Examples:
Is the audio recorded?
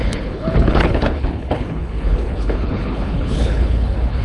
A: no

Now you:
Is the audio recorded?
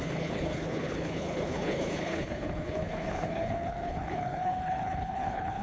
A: no